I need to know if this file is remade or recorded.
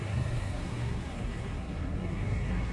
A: remade